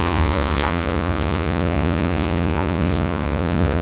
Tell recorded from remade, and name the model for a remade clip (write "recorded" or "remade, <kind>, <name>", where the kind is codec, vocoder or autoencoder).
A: remade, vocoder, Vocos